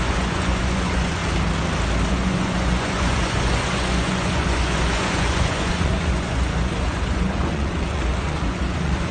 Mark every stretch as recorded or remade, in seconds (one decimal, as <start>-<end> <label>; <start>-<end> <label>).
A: 0.0-1.2 remade; 1.2-2.1 recorded; 2.1-9.1 remade